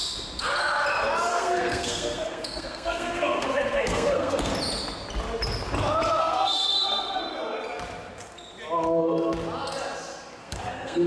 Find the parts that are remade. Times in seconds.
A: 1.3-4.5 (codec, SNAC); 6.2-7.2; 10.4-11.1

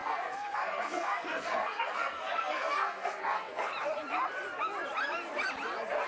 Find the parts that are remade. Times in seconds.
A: 0.0-3.7 (codec, SNAC)

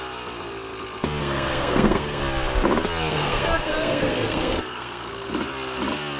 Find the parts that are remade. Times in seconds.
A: 1.2-2.2 (codec, SNAC); 3.1-5.3

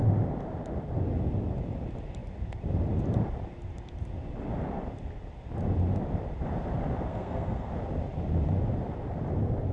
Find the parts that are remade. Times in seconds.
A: 7.1-7.7 (codec, SNAC)

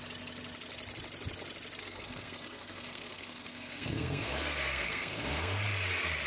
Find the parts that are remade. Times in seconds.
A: 1.8-5.6 (codec, SNAC)

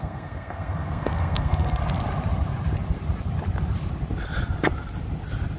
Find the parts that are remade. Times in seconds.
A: 0.0-1.8 (codec, SNAC)

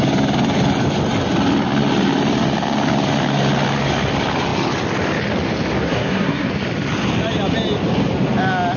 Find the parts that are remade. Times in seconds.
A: 5.8-6.5 (codec, SNAC)

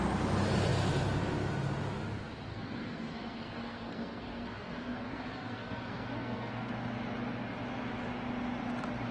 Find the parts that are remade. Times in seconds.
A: 2.5-6.7 (codec, SNAC)